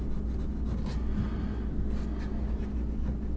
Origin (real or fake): real